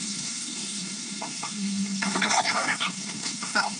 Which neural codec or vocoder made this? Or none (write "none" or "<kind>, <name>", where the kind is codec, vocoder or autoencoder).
codec, SNAC